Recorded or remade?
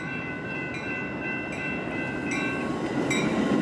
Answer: recorded